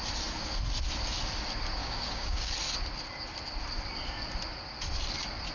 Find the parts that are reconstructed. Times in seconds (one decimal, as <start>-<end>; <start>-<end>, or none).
1.8-2.5